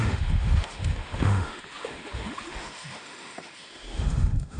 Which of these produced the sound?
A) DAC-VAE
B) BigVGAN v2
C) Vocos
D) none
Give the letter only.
A